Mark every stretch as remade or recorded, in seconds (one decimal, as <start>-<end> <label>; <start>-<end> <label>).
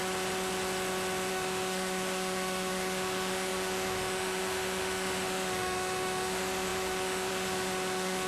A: 0.0-1.3 recorded; 1.3-8.3 remade